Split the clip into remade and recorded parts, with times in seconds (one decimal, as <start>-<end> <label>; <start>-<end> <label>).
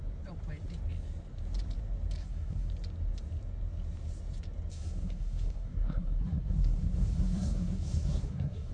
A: 0.0-2.2 recorded; 2.2-2.7 remade; 2.7-4.7 recorded; 4.7-8.7 remade